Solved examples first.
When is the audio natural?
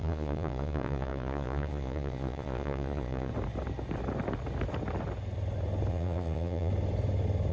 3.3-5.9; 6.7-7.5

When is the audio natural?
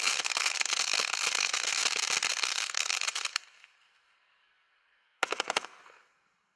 1.8-2.3